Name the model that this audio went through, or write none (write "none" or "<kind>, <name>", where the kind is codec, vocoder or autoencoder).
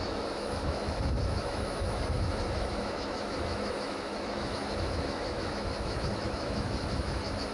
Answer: autoencoder, DAC-VAE